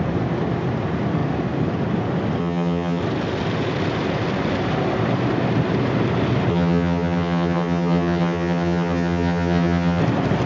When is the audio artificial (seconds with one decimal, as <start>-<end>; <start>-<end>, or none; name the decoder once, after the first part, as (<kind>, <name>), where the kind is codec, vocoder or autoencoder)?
2.4-3.0 (vocoder, HiFi-GAN); 6.5-10.0